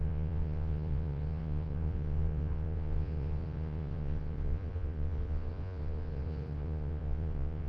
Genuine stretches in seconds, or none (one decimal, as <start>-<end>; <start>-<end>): none